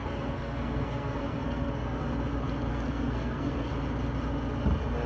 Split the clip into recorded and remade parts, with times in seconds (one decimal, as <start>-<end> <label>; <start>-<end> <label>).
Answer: 0.0-2.1 remade; 2.1-2.7 recorded; 2.7-3.7 remade; 3.7-5.1 recorded